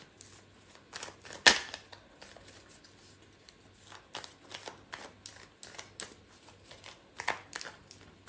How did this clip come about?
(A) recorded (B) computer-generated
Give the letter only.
A